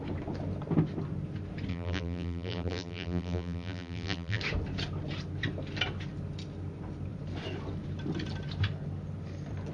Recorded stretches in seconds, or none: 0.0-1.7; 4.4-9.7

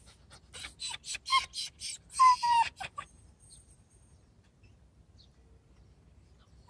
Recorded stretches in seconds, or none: 0.0-1.3; 3.3-6.7